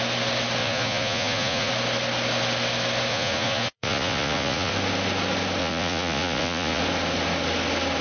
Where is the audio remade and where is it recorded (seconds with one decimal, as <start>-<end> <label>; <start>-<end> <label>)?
0.0-0.6 recorded; 0.6-1.7 remade; 1.7-3.1 recorded; 3.1-4.7 remade; 4.7-5.6 recorded; 5.6-6.8 remade; 6.8-8.0 recorded